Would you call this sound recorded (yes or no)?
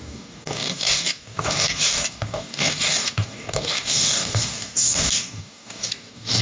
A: no